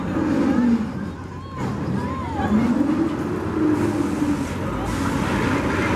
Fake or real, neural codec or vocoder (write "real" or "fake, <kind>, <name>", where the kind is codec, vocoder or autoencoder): real